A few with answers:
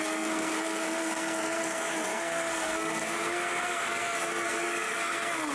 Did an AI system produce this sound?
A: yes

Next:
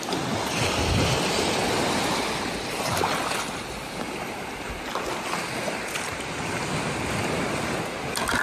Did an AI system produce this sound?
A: no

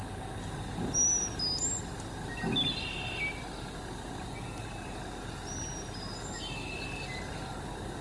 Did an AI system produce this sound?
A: no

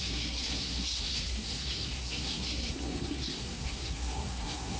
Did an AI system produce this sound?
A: yes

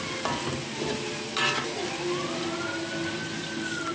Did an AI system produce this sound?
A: no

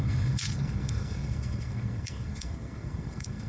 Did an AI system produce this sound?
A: yes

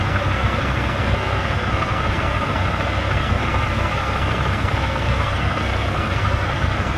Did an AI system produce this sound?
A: yes